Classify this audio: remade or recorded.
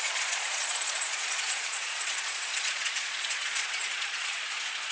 remade